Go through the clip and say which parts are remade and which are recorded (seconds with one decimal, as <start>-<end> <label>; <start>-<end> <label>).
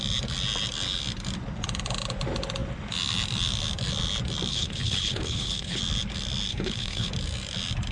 0.0-4.5 recorded; 4.5-5.8 remade; 5.8-6.5 recorded; 6.5-7.1 remade; 7.1-7.9 recorded